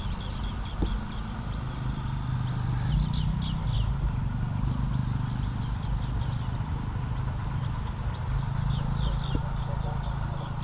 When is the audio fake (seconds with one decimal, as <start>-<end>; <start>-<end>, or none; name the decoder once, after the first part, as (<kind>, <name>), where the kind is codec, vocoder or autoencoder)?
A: none